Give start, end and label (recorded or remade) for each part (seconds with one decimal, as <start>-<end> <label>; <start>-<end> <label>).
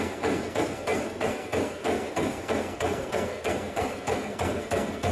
0.0-5.1 remade